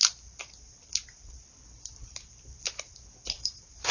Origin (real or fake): real